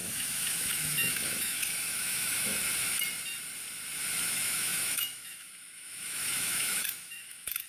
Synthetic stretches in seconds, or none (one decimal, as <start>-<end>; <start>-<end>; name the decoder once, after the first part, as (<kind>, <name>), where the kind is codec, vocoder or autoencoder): 0.0-2.7 (autoencoder, DAC-VAE); 4.3-7.7

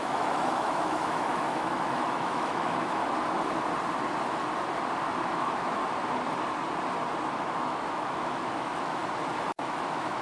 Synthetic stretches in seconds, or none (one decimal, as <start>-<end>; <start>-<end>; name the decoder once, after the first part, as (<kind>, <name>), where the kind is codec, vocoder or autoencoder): 0.0-3.0 (autoencoder, DAC-VAE); 5.3-5.8; 7.3-9.0; 9.6-10.2

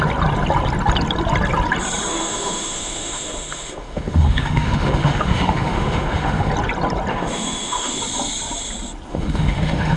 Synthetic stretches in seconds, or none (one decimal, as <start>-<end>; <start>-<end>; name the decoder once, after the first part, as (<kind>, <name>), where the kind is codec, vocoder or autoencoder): 2.1-6.5 (autoencoder, DAC-VAE); 7.1-8.0; 9.1-10.0

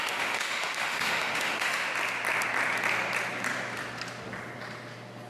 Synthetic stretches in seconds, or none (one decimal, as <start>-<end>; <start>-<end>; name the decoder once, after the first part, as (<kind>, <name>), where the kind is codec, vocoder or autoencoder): 0.0-1.9 (autoencoder, DAC-VAE)